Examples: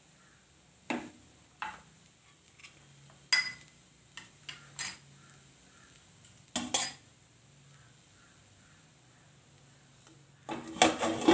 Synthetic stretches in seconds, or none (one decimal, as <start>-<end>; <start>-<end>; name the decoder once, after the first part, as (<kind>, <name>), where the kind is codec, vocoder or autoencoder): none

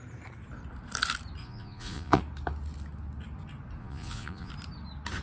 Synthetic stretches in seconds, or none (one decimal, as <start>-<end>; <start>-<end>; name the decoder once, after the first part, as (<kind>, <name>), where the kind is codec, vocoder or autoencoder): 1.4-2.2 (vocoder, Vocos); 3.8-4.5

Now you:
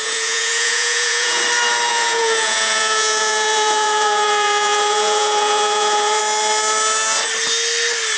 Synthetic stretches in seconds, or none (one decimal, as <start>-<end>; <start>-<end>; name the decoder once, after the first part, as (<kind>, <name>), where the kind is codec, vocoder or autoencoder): 0.0-1.4 (vocoder, Vocos); 1.9-6.2

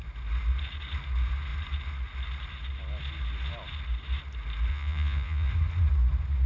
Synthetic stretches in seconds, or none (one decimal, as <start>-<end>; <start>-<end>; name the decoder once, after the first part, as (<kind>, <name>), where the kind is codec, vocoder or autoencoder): 4.7-5.5 (vocoder, Vocos)

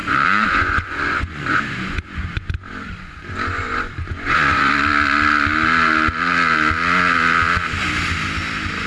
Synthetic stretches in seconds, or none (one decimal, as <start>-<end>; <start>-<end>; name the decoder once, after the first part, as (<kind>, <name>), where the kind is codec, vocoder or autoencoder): 0.0-4.7 (vocoder, Vocos)

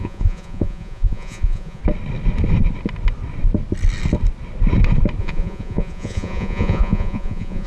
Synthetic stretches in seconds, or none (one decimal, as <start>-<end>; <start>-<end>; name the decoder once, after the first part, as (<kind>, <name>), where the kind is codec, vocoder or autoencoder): 0.0-1.8 (vocoder, Vocos); 5.2-7.7

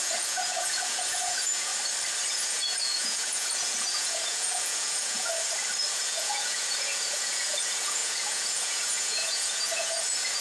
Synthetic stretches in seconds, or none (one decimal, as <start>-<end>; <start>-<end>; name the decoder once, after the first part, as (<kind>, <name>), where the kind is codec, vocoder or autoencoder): 0.0-1.7 (vocoder, Vocos); 2.3-5.3; 5.9-10.4

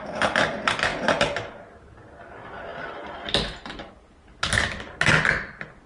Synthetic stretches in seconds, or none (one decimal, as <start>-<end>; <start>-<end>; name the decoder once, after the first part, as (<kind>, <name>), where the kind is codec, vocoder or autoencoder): none